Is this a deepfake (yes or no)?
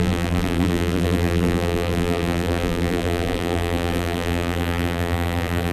yes